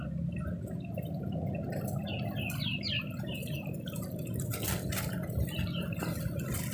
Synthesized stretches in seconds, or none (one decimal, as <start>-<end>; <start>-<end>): none